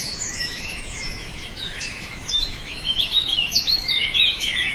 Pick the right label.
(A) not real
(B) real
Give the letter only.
A